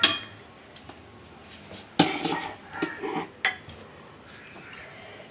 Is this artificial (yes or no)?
no